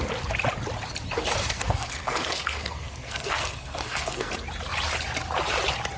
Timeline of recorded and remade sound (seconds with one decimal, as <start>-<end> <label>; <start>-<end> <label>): 0.0-1.4 recorded; 1.4-4.3 remade; 4.3-6.0 recorded